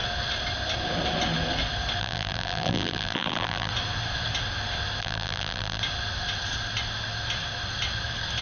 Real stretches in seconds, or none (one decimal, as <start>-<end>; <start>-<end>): 0.0-2.0; 3.7-5.0; 5.8-8.4